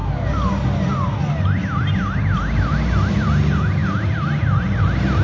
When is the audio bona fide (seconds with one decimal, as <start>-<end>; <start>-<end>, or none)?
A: 0.0-5.2